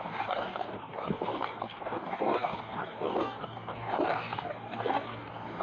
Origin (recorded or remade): remade